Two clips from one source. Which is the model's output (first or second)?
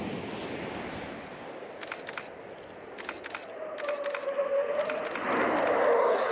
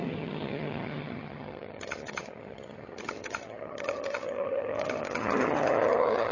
second